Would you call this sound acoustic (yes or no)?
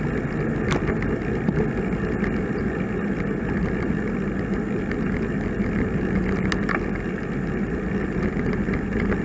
yes